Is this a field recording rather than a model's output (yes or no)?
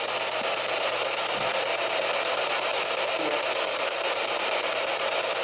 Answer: yes